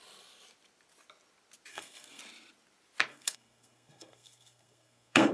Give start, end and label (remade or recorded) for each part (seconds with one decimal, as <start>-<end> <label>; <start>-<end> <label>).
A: 0.0-1.7 recorded; 1.7-2.2 remade; 2.2-3.1 recorded; 3.1-5.3 remade